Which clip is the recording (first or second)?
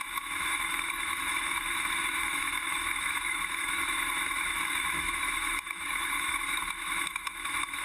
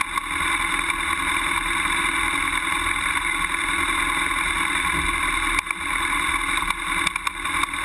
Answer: second